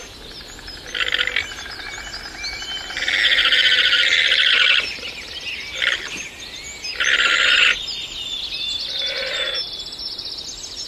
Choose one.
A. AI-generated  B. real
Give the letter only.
B